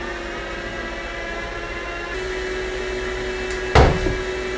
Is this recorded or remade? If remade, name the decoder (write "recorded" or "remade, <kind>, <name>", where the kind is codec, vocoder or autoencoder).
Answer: recorded